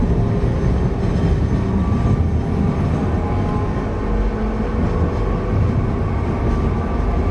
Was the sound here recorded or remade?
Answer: recorded